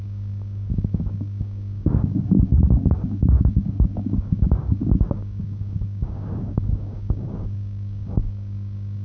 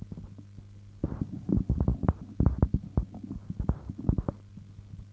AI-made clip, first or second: first